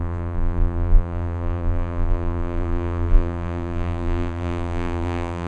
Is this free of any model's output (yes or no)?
no